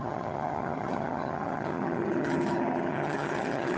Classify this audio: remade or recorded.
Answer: remade